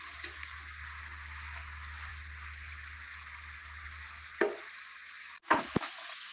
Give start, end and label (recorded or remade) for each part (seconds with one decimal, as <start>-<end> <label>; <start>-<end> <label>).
0.0-6.3 recorded